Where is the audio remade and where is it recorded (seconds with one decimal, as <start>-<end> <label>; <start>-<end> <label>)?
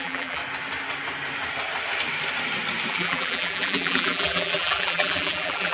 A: 0.0-0.4 remade; 0.4-2.9 recorded; 2.9-5.7 remade